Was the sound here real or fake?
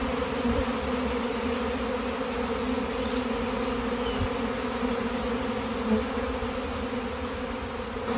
real